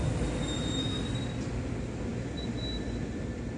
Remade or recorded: recorded